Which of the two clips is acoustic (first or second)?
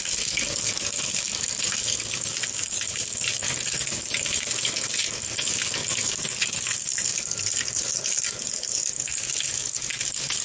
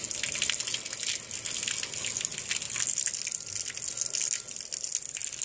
second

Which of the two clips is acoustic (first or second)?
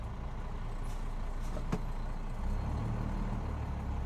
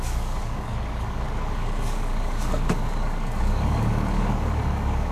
first